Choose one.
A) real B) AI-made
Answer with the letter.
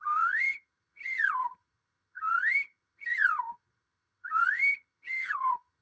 B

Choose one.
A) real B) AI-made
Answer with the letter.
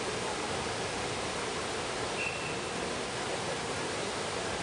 A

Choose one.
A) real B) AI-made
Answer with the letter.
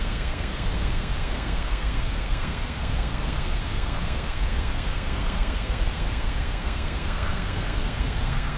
B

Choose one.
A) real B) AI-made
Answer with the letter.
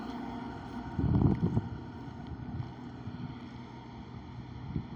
A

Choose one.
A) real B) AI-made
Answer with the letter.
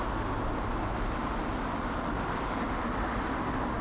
A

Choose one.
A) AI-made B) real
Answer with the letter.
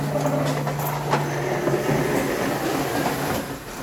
B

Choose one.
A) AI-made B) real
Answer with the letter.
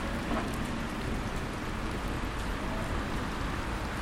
A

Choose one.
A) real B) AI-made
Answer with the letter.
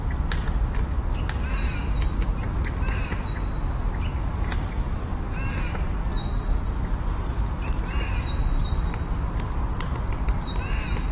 A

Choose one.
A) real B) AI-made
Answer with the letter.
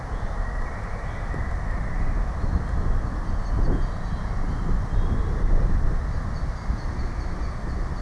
A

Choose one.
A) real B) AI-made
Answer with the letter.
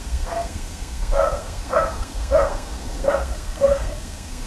B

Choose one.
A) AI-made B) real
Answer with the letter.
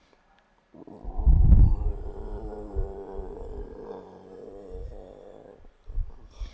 A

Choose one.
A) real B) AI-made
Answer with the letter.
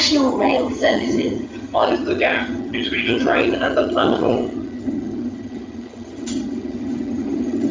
B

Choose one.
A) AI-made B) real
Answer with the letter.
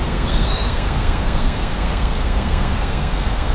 A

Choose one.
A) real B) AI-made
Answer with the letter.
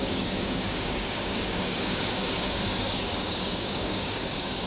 B